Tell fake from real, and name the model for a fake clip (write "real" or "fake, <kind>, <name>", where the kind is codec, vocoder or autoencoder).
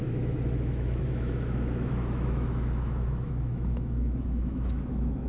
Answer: fake, autoencoder, DAC-VAE